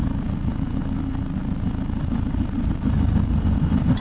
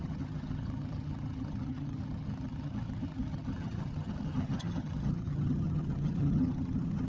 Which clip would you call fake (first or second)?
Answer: second